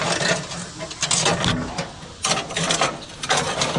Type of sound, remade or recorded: recorded